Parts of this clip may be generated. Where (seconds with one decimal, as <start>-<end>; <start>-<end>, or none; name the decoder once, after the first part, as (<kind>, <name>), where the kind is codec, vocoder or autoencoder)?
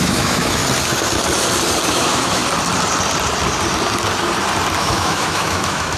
0.0-0.6 (autoencoder, DAC-VAE); 1.9-2.4; 4.8-6.0